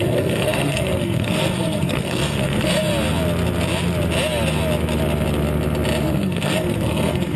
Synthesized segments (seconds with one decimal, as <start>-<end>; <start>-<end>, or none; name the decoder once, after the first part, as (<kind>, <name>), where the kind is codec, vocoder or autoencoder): 0.0-2.9 (codec, SNAC); 6.1-7.4